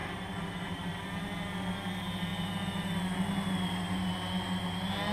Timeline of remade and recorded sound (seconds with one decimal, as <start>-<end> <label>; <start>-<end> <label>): 0.0-1.0 remade; 1.0-5.1 recorded